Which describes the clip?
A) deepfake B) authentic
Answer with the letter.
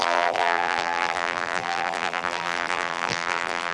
A